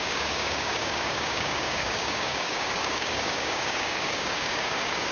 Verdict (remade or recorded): remade